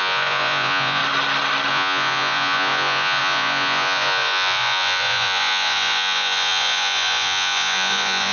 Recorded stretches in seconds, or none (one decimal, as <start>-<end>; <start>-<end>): 1.0-1.7